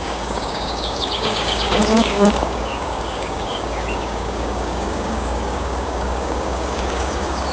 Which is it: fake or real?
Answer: fake